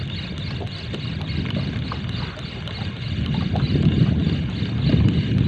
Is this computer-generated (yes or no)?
no